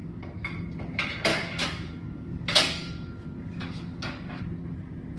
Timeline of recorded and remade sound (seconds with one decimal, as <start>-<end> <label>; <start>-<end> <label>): 0.0-0.5 remade; 0.5-1.3 recorded; 1.3-4.4 remade; 4.4-5.2 recorded

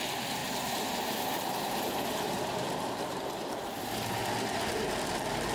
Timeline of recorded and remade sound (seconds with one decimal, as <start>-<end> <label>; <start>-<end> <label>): 0.0-0.4 recorded; 0.4-3.5 remade; 3.5-5.5 recorded

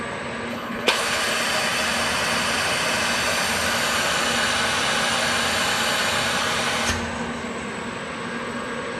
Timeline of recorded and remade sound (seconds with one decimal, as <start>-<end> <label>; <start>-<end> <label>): 0.0-0.5 recorded; 0.5-1.2 remade; 1.2-9.0 recorded

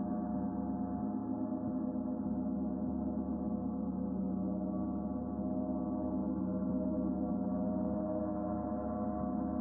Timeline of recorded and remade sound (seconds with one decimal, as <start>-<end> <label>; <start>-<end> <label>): 0.0-9.6 recorded

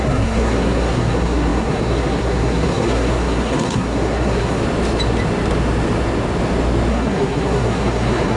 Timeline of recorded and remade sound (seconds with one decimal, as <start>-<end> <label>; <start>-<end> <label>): 0.0-4.6 remade; 4.6-6.9 recorded; 6.9-8.4 remade

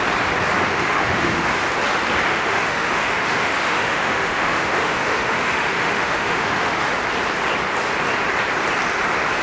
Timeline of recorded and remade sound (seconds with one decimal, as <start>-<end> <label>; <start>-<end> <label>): 0.0-0.7 recorded; 0.7-1.6 remade; 1.6-2.3 recorded; 2.3-6.9 remade; 6.9-9.4 recorded

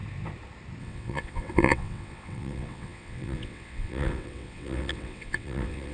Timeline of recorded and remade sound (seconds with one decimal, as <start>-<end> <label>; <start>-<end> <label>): 0.0-0.8 recorded; 0.8-5.9 remade